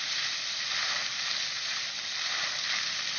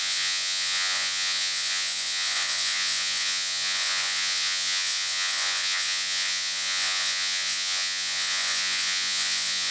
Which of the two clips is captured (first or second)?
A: first